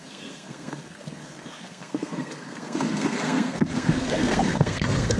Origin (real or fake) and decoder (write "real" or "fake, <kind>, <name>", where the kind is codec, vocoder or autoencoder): fake, codec, SNAC